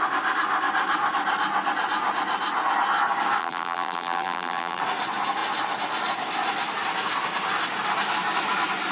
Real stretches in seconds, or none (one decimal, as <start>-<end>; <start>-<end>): 0.0-3.4; 4.8-8.9